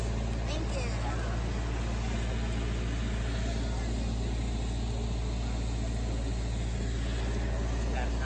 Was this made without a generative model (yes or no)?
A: yes